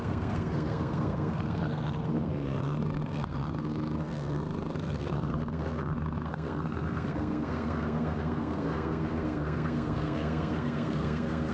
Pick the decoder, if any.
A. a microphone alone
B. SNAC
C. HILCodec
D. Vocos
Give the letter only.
B